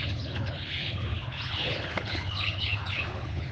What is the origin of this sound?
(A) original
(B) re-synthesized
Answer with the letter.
B